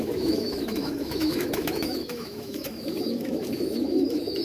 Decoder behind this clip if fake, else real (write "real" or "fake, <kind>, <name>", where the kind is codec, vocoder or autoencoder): fake, autoencoder, DAC-VAE